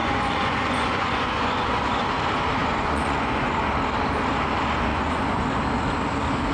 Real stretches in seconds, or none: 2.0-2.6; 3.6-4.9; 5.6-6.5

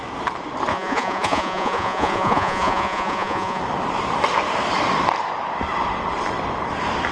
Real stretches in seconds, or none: 0.0-0.7; 3.6-7.1

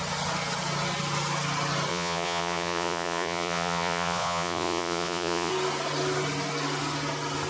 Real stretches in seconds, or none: 0.0-1.9; 5.5-7.5

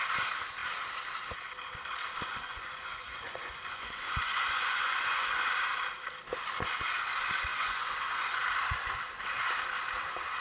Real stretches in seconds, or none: 0.0-2.3; 5.5-7.5; 8.4-10.4

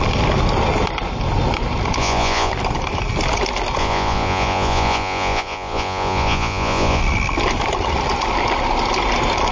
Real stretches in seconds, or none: 0.0-2.0; 2.5-3.8; 7.0-9.5